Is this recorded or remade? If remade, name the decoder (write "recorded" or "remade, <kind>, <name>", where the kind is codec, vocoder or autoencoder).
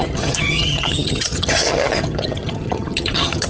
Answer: remade, vocoder, HiFi-GAN